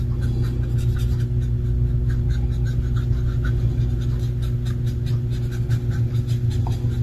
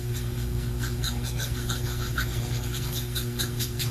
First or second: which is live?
first